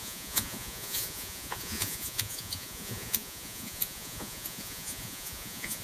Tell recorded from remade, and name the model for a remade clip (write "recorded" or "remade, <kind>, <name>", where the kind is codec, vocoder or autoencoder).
remade, vocoder, Vocos